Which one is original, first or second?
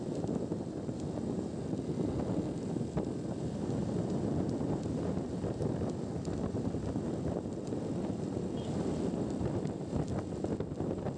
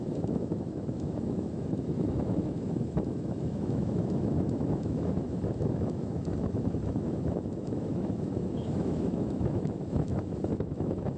first